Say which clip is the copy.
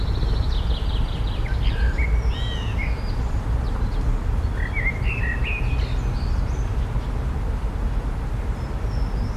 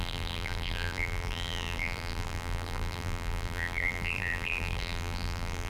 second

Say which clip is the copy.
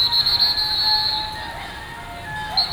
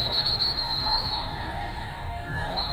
second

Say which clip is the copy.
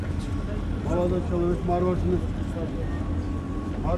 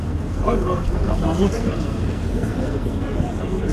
second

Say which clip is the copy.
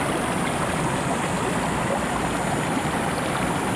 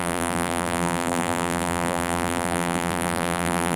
second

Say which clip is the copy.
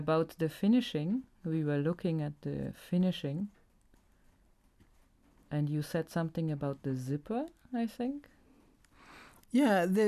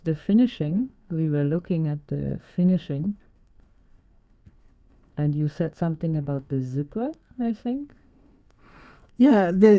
second